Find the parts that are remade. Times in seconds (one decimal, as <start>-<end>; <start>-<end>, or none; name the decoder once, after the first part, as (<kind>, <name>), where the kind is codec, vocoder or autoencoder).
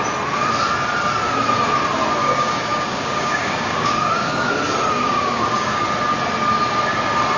2.2-4.5 (codec, DAC); 5.0-5.8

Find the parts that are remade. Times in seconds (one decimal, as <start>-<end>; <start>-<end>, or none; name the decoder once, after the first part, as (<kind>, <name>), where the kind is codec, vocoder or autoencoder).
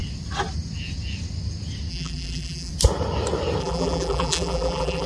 1.9-2.7 (vocoder, BigVGAN v2); 3.6-5.1